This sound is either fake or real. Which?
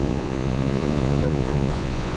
fake